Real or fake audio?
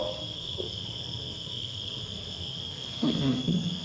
fake